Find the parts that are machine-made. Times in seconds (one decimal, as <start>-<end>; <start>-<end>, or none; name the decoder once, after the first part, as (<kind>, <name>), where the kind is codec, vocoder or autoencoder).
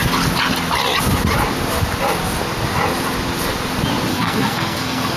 4.1-5.2 (codec, SNAC)